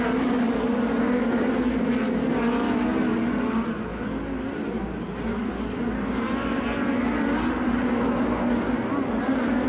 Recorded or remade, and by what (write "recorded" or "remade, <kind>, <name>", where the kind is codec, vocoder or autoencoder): recorded